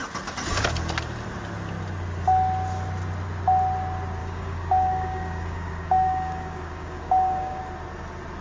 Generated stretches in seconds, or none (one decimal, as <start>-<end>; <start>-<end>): 4.2-7.6